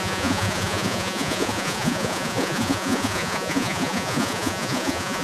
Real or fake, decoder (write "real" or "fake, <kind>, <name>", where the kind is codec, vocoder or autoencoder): fake, vocoder, Vocos